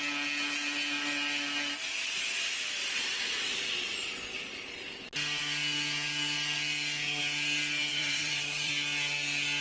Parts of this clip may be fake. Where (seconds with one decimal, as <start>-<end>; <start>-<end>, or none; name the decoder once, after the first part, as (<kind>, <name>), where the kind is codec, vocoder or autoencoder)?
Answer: 7.9-8.7 (vocoder, HiFi-GAN)